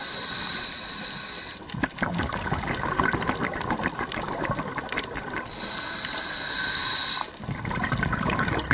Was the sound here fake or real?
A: real